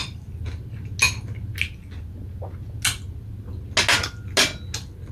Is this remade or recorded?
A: recorded